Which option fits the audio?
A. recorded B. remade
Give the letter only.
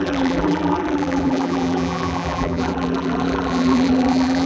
B